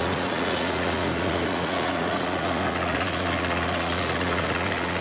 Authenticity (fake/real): fake